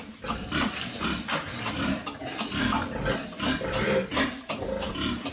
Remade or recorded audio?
recorded